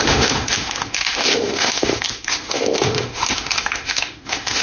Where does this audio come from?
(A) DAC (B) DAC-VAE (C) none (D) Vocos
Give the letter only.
B